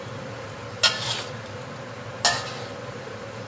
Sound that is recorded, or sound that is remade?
recorded